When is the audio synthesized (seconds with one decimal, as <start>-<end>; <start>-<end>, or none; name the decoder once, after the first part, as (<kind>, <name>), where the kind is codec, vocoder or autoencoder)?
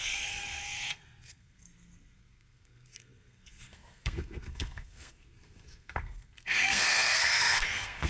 0.0-8.1 (codec, SNAC)